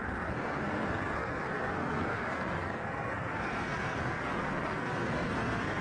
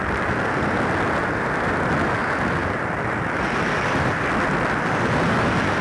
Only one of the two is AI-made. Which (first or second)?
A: first